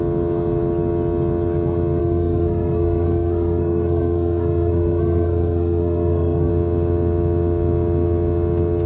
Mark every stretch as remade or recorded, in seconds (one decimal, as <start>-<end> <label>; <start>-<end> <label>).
0.0-2.0 recorded; 2.0-6.5 remade; 6.5-8.9 recorded